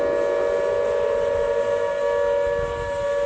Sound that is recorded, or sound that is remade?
recorded